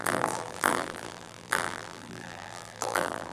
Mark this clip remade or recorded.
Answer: remade